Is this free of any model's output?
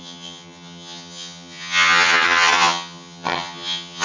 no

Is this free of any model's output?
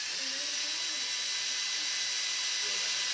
yes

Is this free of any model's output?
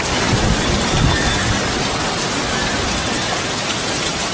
yes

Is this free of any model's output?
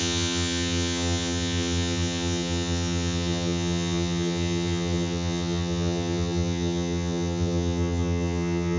no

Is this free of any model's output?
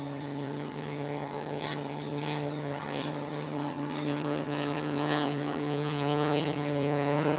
no